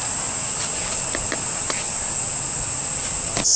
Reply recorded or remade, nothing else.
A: recorded